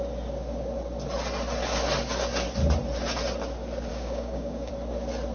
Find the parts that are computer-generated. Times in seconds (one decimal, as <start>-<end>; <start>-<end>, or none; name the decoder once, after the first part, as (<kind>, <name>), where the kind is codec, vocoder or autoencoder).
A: 3.9-4.7 (codec, DAC)